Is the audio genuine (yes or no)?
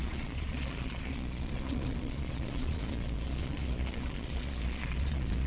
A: no